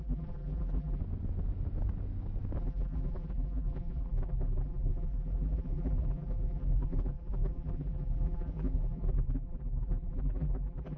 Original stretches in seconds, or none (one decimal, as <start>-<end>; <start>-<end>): 1.0-2.6